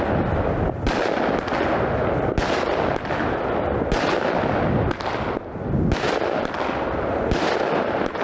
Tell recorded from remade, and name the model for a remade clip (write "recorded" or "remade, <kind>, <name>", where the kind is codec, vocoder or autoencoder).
recorded